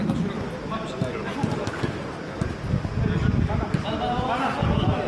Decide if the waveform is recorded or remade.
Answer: recorded